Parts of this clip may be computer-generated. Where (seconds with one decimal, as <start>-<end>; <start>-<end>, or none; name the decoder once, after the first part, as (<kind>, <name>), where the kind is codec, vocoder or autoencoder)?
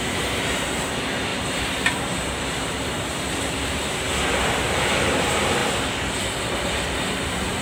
0.0-5.6 (vocoder, BigVGAN v2); 6.4-7.6